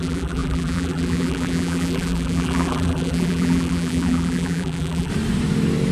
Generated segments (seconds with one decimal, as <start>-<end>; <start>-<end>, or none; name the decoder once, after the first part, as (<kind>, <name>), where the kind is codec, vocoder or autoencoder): 0.0-5.1 (vocoder, BigVGAN v2)